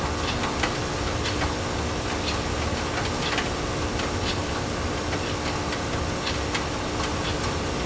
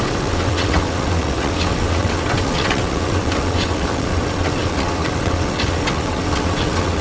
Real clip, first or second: first